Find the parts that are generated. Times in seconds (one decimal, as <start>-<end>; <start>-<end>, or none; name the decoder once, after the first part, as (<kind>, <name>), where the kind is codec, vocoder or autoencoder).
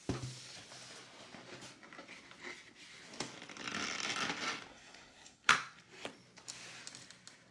4.7-5.5 (codec, SNAC)